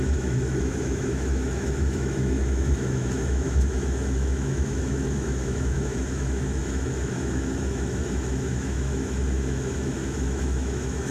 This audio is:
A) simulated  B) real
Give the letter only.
A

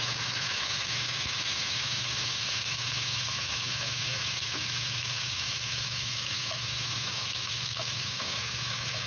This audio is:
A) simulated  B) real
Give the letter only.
A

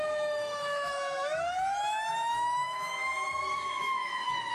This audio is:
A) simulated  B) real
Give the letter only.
A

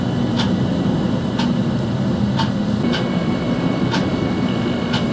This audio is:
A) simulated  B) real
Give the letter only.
B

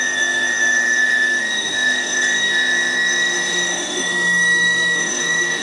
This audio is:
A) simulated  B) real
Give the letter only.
A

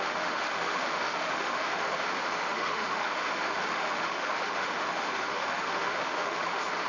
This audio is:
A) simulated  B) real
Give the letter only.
A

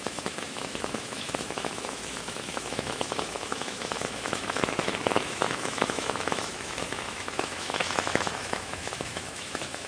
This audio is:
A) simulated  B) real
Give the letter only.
A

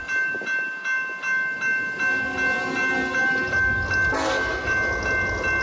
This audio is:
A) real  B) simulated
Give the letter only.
A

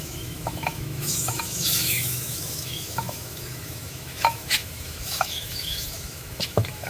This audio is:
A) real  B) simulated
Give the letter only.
B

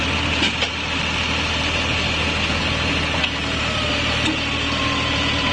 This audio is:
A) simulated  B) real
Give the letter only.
B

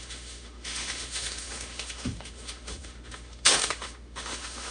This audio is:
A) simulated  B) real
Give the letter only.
A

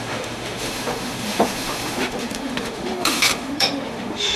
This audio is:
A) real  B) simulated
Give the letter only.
B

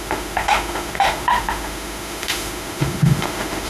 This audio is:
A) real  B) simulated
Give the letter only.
B